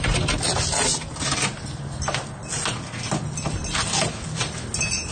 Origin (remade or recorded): recorded